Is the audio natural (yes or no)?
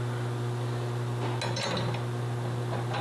yes